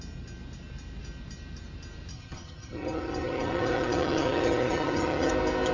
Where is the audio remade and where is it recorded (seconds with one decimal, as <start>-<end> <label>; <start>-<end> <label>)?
0.0-2.1 recorded; 2.1-5.3 remade; 5.3-5.7 recorded